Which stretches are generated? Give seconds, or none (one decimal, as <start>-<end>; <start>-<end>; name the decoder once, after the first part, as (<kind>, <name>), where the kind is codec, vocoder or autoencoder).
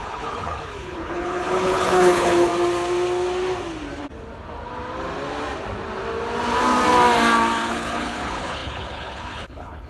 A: 0.0-2.5 (codec, HILCodec); 7.7-9.9